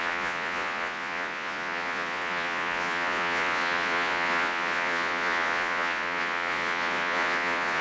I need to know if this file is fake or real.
fake